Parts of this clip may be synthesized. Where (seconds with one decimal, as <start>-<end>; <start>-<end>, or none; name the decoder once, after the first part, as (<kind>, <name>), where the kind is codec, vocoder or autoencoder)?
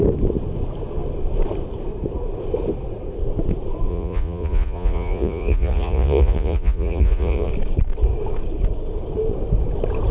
3.9-7.5 (vocoder, Vocos)